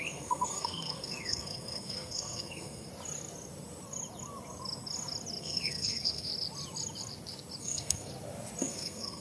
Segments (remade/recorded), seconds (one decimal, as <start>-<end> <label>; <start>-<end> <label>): 0.0-2.9 remade; 2.9-5.4 recorded; 5.4-6.3 remade; 6.3-7.6 recorded; 7.6-8.1 remade; 8.1-8.6 recorded; 8.6-9.2 remade